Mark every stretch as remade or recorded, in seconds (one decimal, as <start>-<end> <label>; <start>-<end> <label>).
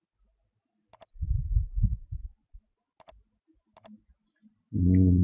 0.0-5.2 recorded